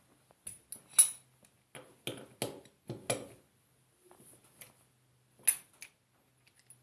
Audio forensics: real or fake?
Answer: real